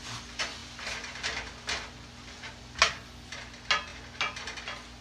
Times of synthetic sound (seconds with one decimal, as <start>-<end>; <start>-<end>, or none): none